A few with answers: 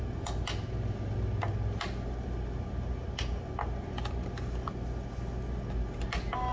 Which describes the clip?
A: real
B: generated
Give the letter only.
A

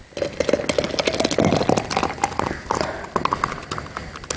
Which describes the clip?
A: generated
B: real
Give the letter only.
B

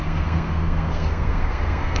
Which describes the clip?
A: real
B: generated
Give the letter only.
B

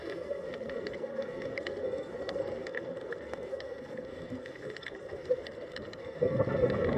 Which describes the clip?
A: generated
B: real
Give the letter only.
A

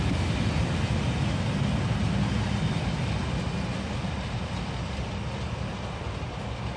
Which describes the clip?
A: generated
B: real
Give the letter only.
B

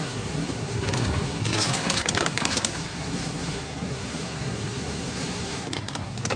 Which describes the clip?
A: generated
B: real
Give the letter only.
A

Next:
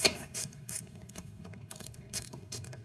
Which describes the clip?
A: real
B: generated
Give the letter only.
B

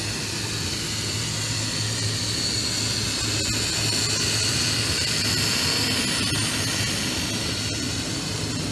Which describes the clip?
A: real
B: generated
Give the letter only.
A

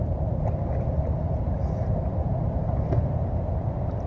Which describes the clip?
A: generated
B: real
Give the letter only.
B